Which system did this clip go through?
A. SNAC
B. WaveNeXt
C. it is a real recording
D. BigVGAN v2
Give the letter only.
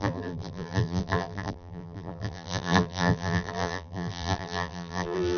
D